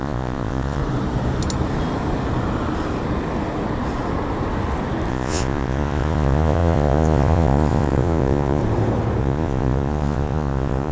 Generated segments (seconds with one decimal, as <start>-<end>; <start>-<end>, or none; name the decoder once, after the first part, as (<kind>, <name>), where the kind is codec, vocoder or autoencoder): 0.0-0.8 (vocoder, Vocos); 5.1-8.6; 9.2-10.9